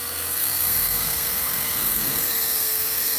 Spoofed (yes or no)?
yes